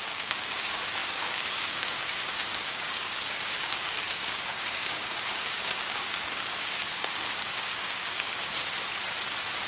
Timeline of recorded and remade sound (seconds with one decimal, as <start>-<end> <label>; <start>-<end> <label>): 0.0-8.3 remade; 8.3-9.7 recorded